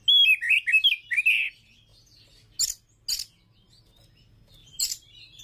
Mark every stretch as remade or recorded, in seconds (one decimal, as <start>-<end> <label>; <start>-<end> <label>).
0.0-4.6 recorded; 4.6-5.4 remade